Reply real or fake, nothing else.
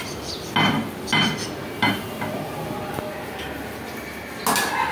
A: real